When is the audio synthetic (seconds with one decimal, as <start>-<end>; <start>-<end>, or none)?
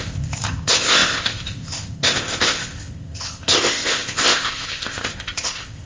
0.0-5.9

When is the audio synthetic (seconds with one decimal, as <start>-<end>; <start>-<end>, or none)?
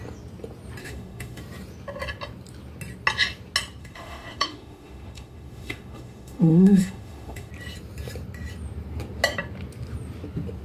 0.8-1.4; 3.8-7.5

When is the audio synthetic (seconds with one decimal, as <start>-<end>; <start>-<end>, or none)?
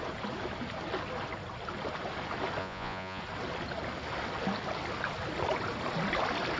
2.6-3.2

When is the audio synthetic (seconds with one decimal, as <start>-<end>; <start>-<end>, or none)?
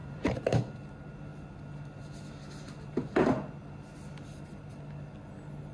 0.0-0.6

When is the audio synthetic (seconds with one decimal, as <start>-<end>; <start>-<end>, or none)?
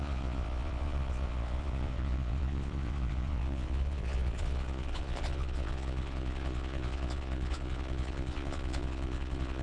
0.0-9.6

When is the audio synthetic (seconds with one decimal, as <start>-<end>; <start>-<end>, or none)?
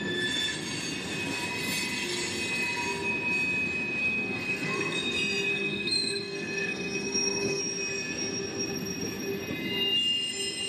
4.0-5.0; 5.5-7.6